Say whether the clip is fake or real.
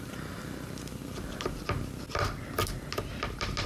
real